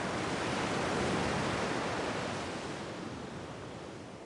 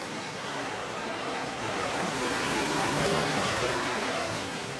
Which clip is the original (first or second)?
first